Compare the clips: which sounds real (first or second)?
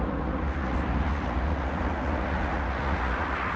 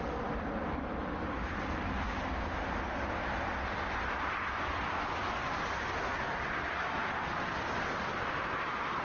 second